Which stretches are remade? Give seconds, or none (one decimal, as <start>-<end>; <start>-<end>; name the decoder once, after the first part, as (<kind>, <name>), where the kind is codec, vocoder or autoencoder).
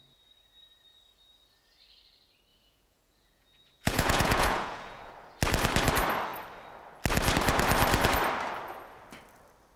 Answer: 2.5-5.1 (vocoder, Vocos)